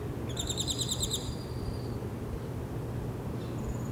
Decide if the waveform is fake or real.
real